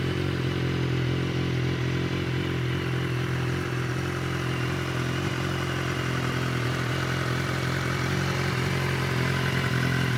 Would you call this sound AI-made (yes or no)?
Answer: no